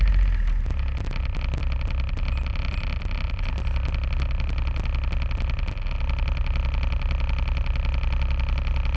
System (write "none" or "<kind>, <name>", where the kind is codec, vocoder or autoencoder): none